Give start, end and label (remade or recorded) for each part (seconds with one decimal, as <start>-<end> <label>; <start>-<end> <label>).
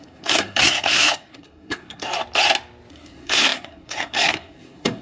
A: 0.0-2.1 remade; 2.1-2.9 recorded; 2.9-5.0 remade